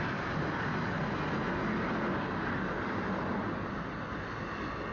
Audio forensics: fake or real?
real